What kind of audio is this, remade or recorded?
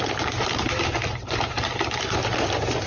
recorded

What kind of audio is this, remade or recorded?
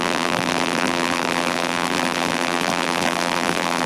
remade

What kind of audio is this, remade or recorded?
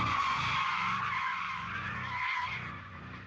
remade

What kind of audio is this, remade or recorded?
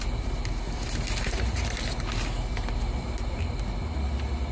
remade